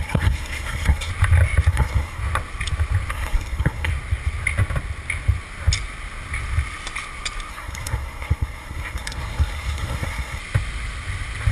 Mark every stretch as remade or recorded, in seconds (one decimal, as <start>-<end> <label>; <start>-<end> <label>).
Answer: 0.0-1.1 remade; 1.1-1.7 recorded; 1.7-2.2 remade; 2.2-3.1 recorded; 3.1-3.9 remade; 3.9-7.5 recorded; 7.5-10.4 remade; 10.4-11.5 recorded